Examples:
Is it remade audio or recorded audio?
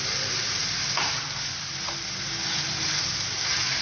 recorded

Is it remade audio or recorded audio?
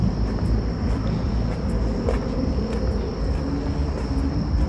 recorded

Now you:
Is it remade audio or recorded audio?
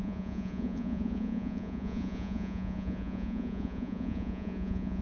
remade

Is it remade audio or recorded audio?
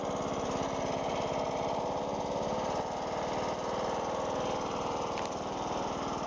recorded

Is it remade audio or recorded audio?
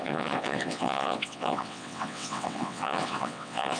remade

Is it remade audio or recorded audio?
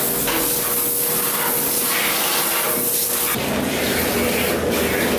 recorded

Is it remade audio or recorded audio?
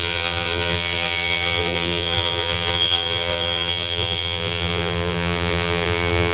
remade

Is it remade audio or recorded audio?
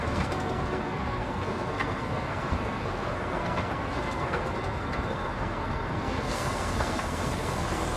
remade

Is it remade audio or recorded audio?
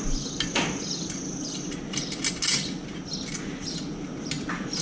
recorded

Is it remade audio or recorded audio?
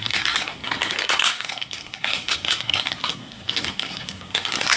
remade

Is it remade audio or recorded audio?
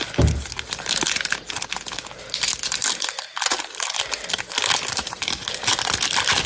recorded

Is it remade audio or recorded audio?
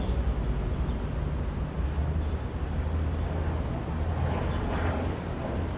recorded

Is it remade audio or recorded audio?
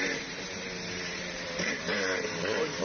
remade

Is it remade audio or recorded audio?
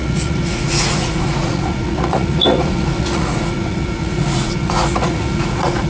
remade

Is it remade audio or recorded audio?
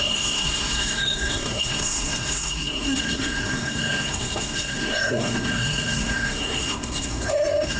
remade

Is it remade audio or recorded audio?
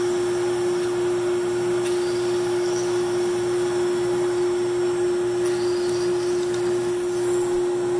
recorded